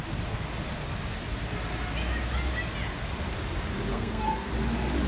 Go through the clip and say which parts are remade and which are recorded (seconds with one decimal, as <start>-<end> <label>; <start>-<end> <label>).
0.0-3.9 recorded; 3.9-4.5 remade; 4.5-5.1 recorded